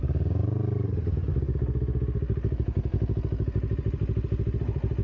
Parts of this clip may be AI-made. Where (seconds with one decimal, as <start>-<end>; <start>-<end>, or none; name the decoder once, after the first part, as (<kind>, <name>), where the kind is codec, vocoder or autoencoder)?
0.4-1.3 (vocoder, BigVGAN v2)